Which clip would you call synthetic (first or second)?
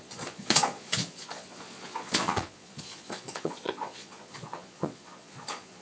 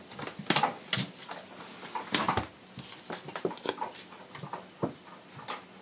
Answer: first